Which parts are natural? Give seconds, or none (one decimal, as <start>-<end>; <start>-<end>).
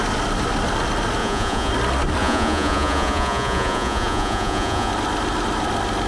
0.0-1.2; 1.7-2.2; 4.9-6.1